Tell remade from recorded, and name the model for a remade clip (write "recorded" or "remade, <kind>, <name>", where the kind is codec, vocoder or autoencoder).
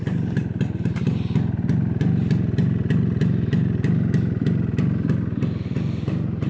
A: recorded